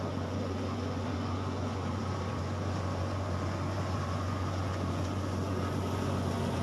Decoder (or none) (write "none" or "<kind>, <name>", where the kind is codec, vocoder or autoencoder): vocoder, Vocos